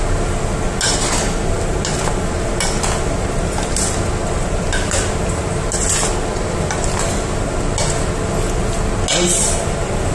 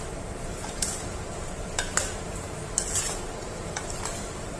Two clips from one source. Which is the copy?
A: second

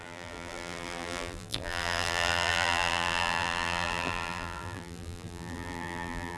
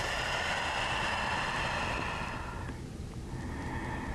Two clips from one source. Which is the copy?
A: first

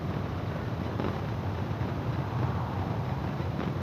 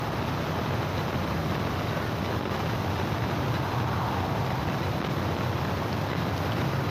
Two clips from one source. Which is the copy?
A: first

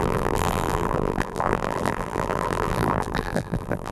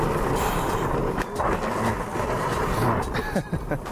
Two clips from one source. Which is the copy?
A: first